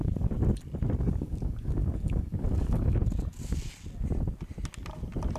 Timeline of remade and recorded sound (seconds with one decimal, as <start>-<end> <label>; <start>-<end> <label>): 0.0-0.4 remade; 0.4-1.0 recorded; 1.0-3.0 remade; 3.0-5.4 recorded